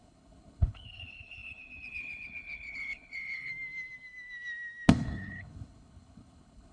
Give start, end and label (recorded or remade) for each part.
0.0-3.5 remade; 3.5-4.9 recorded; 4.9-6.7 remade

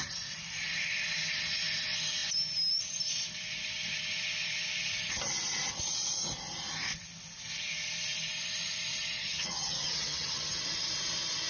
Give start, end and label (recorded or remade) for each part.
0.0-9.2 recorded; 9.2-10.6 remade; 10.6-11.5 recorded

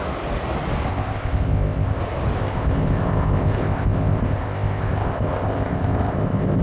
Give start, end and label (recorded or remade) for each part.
0.0-0.9 recorded; 0.9-2.0 remade; 2.0-2.4 recorded; 2.4-6.6 remade

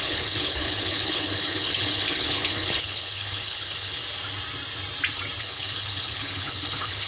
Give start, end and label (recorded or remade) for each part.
0.0-4.0 remade; 4.0-5.4 recorded; 5.4-7.1 remade

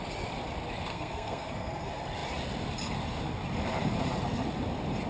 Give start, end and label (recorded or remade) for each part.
0.0-0.9 recorded; 0.9-1.7 remade; 1.7-5.1 recorded